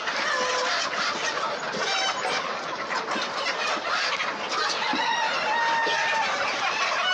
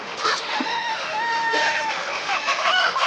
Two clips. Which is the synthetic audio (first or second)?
second